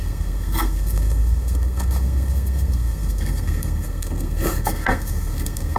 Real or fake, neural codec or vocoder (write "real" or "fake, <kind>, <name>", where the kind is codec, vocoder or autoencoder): fake, codec, SNAC